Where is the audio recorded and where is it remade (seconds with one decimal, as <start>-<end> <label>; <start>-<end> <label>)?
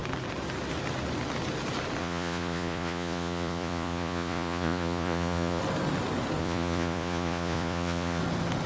0.0-2.0 recorded; 2.0-5.6 remade; 5.6-6.4 recorded; 6.4-8.2 remade; 8.2-8.7 recorded